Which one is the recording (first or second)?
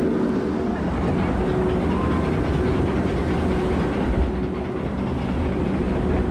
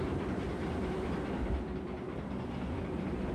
first